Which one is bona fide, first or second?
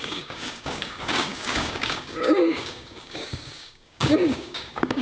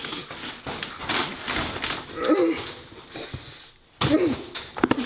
second